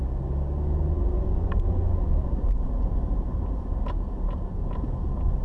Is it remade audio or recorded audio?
recorded